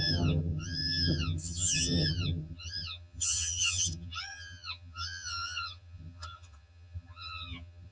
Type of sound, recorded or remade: remade